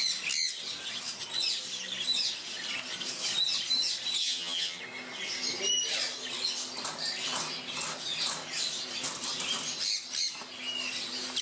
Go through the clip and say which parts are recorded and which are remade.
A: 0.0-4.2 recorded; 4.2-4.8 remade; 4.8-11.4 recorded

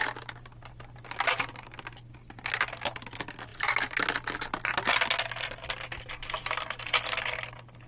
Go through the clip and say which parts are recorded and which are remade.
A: 0.0-7.9 recorded

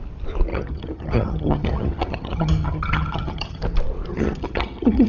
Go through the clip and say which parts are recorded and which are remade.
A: 0.0-0.5 recorded; 0.5-3.6 remade; 3.6-4.1 recorded; 4.1-5.1 remade

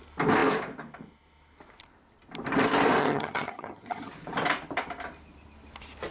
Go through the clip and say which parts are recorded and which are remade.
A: 0.0-3.0 recorded; 3.0-4.1 remade; 4.1-6.1 recorded

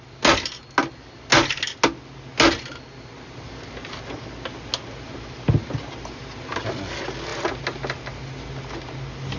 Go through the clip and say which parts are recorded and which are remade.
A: 0.0-9.4 recorded

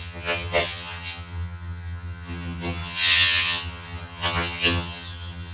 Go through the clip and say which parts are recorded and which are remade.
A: 0.0-5.5 remade

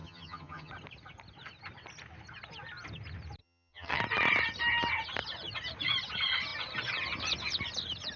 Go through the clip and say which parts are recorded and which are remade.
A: 0.0-0.7 remade; 0.7-3.4 recorded; 3.4-4.0 remade; 4.0-8.2 recorded

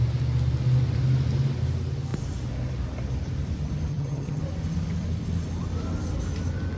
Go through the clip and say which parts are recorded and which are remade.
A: 0.0-3.9 recorded; 3.9-4.4 remade; 4.4-6.8 recorded